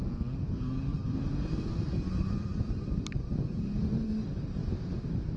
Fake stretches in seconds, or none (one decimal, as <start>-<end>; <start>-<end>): 0.9-4.1; 4.6-5.4